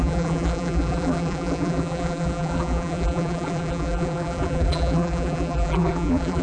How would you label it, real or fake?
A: fake